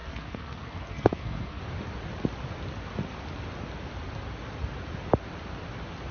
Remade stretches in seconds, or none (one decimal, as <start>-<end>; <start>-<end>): 0.0-1.6